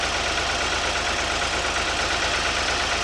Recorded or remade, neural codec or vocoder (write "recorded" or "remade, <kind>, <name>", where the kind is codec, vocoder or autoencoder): recorded